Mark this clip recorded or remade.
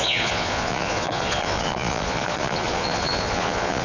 remade